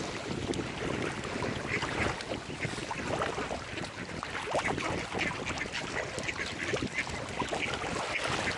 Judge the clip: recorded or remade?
recorded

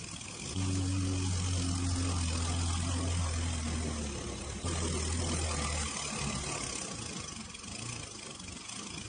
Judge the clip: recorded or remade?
recorded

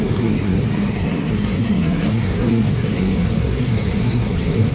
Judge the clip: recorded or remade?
remade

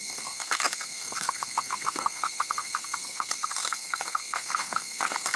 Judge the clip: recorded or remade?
remade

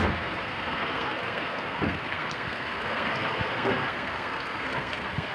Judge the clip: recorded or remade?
remade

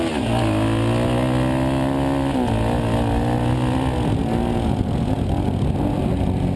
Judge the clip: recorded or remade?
recorded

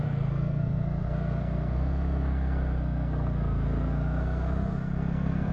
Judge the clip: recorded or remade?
remade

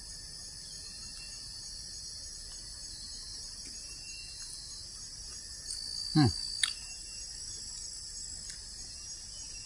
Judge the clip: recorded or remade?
recorded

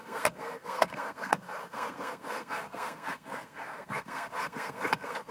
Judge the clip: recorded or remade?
remade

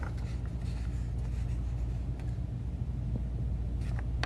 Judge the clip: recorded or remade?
recorded